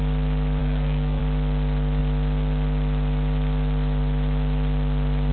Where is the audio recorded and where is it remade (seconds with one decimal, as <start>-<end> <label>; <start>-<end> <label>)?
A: 0.0-0.6 recorded; 0.6-1.2 remade; 1.2-5.3 recorded